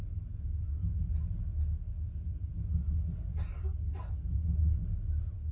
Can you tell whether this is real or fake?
real